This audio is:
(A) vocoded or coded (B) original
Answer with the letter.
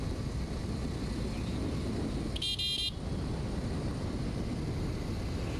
B